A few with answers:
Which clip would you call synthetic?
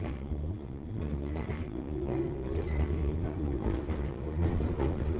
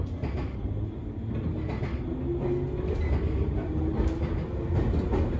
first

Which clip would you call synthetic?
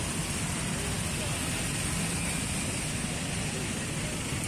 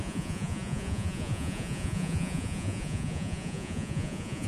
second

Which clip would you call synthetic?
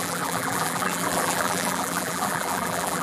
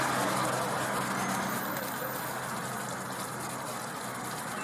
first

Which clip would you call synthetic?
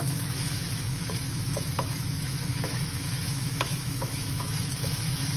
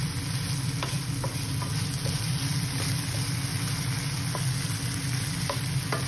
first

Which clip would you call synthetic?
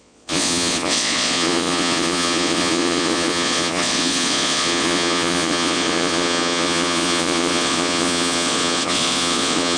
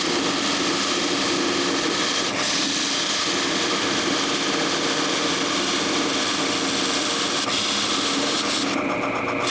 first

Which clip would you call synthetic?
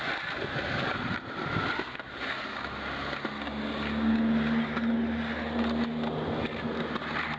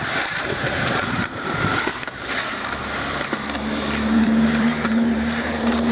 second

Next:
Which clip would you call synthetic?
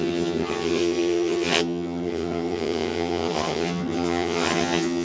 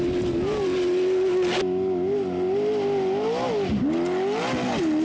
first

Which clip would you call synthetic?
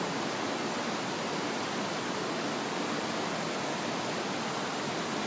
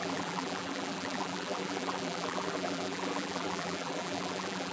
second